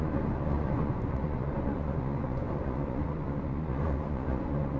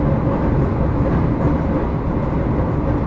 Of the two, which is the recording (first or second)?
second